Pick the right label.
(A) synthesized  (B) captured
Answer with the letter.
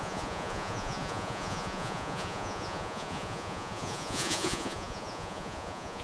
A